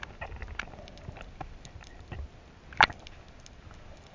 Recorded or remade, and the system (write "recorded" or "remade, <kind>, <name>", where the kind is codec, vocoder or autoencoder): recorded